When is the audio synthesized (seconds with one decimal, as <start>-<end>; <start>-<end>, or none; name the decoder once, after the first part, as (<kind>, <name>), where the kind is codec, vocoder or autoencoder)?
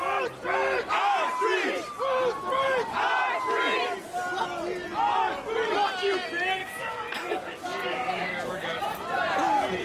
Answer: 6.6-8.8 (codec, DAC)